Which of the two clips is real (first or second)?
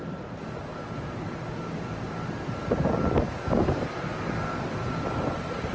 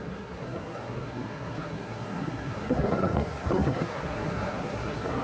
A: first